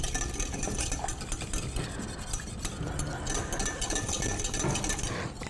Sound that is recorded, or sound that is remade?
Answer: recorded